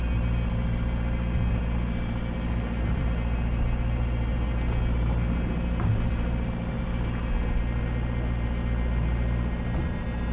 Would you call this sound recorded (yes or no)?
yes